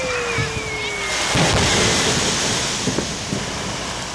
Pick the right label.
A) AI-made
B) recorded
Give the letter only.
B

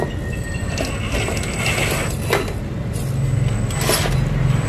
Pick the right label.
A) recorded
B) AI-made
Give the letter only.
A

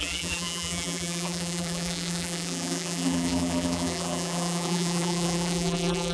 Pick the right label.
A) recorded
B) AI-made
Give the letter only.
B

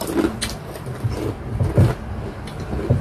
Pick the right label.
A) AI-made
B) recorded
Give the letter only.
B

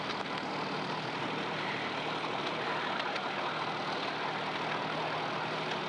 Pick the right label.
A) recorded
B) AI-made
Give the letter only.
A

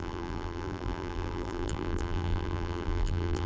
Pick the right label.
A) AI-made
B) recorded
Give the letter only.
A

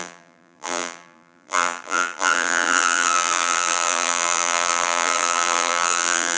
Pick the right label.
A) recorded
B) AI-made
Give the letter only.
B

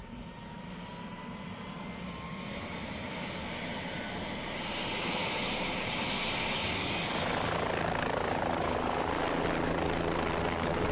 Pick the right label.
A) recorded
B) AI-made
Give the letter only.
A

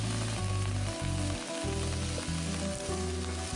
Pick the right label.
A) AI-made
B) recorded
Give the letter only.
B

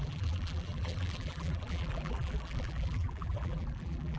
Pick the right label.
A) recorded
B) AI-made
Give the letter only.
B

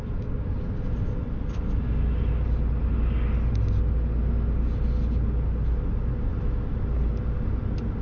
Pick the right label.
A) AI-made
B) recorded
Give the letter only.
B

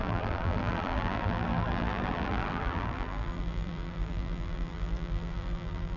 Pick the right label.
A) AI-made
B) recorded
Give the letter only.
A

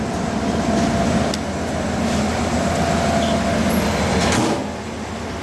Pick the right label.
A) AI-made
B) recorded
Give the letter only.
B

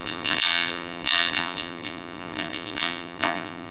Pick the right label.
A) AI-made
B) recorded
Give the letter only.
A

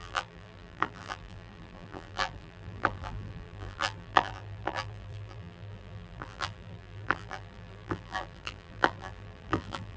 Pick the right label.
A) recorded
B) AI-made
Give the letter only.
B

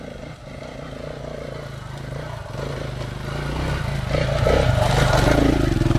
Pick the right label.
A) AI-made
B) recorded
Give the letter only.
B